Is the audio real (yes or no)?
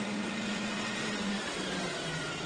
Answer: no